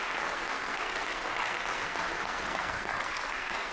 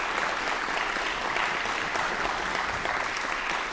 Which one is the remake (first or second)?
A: first